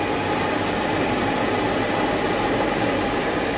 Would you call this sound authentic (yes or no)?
yes